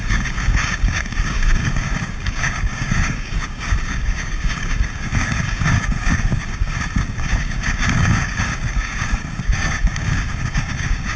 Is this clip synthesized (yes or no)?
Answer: yes